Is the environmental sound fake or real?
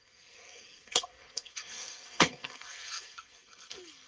fake